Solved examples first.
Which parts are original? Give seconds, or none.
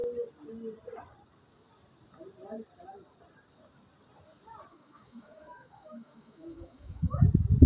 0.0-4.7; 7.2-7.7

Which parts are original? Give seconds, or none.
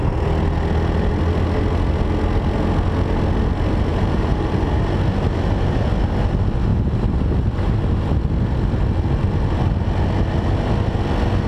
0.0-3.9; 4.5-6.7; 8.1-11.5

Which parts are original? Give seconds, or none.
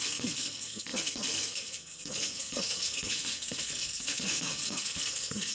none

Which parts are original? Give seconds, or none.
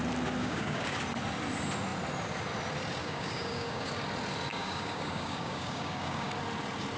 0.0-0.4; 1.0-3.0; 3.9-4.5; 6.3-7.0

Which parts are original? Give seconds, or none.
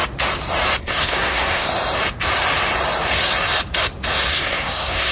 0.0-0.8; 1.7-4.3